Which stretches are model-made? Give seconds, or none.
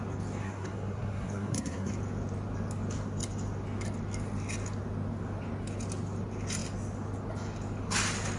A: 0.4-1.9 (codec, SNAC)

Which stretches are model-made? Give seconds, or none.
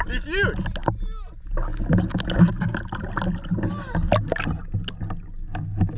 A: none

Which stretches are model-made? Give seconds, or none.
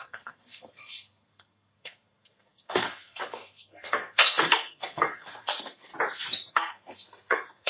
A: 0.0-5.9 (codec, SNAC); 6.5-7.7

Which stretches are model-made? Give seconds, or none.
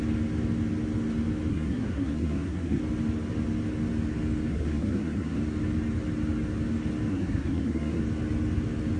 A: 1.5-2.8 (codec, SNAC); 4.5-5.4; 7.1-8.0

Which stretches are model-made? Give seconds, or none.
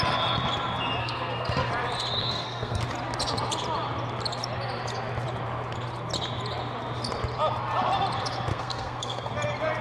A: 1.0-1.7 (codec, SNAC); 2.2-2.8; 8.5-9.3